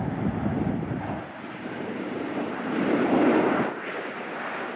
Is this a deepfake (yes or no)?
no